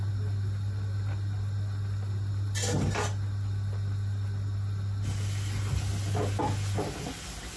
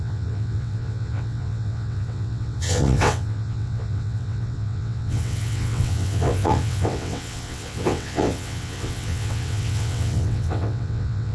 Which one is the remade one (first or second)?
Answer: second